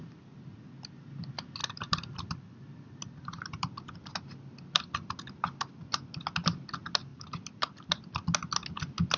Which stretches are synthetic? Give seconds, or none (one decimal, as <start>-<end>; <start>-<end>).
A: 1.6-4.1; 7.1-7.9